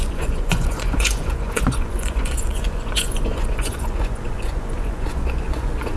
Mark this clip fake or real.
fake